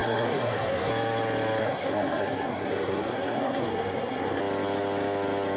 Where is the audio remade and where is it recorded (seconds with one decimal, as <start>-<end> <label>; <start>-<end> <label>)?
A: 0.0-0.9 remade; 0.9-1.6 recorded; 1.6-4.4 remade; 4.4-5.6 recorded